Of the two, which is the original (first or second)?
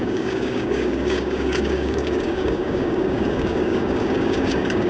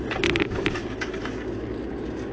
second